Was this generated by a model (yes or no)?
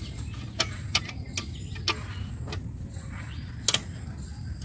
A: no